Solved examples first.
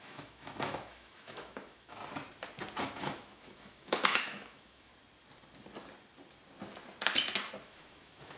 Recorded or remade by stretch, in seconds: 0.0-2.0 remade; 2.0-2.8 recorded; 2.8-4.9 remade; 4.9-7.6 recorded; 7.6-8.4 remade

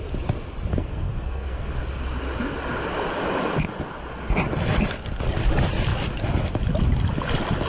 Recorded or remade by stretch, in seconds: 0.0-0.7 recorded; 0.7-1.7 remade; 1.7-7.7 recorded

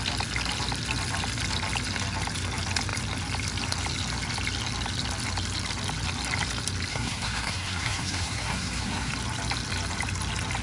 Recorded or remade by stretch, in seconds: 0.0-6.9 recorded; 6.9-9.1 remade; 9.1-10.6 recorded